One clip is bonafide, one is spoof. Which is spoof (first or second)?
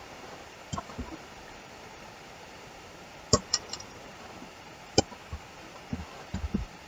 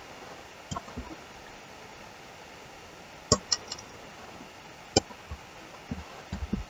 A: first